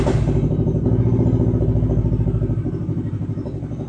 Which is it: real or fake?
real